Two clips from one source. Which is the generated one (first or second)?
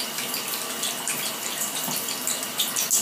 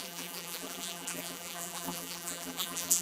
second